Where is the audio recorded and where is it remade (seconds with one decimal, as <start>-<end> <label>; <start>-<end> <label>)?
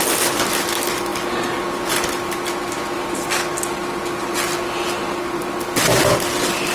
0.0-6.7 recorded